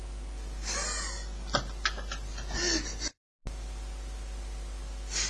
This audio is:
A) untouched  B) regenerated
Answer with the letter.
A